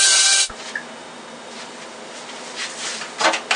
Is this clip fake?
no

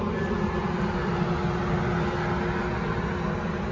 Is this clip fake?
no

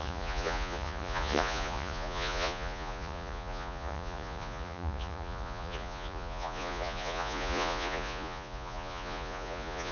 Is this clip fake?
yes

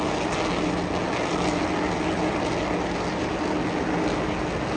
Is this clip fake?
no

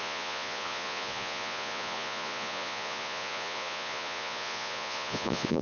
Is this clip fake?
yes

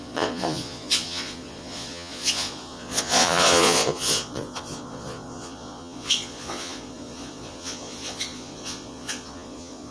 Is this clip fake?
yes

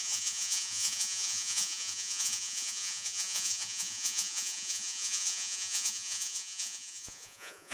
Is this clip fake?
yes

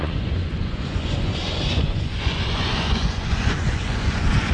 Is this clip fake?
yes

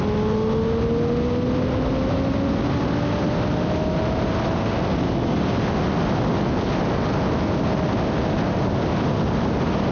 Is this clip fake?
no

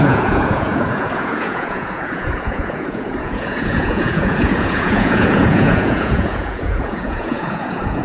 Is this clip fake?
yes